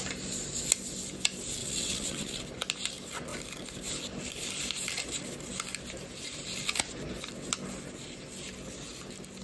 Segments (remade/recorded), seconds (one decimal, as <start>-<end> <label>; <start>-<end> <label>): 0.0-1.6 recorded; 1.6-2.4 remade; 2.4-9.4 recorded